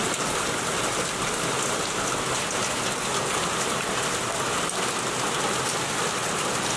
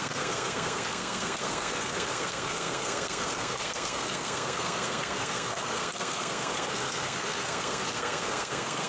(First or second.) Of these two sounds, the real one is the first